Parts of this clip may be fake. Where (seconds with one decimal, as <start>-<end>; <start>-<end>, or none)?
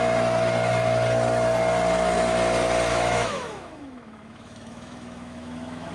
2.9-5.9